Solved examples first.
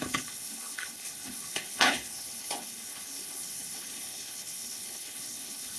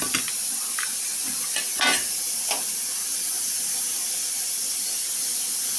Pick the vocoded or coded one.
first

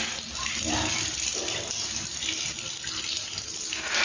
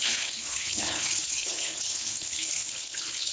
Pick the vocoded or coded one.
second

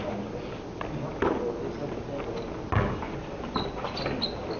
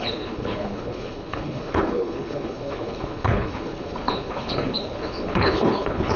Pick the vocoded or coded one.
second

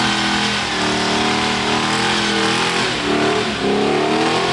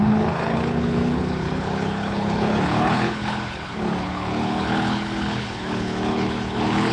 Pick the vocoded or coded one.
second